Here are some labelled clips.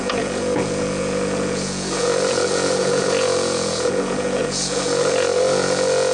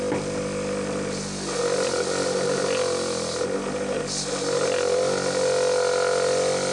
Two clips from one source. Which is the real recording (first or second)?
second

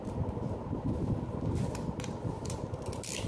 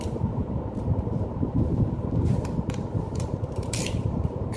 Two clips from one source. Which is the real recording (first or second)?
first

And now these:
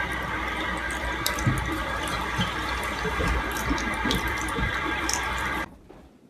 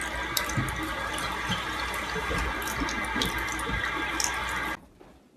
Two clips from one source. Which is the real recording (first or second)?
second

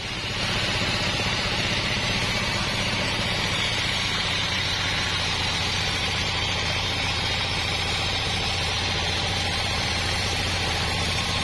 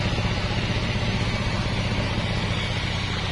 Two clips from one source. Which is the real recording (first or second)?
second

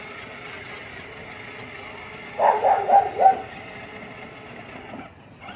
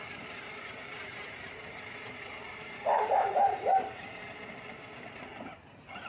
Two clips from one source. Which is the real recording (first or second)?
first